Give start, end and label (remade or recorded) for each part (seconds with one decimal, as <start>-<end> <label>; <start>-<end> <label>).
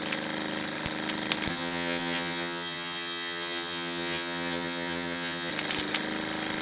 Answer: 0.0-1.5 recorded; 1.5-5.5 remade; 5.5-6.6 recorded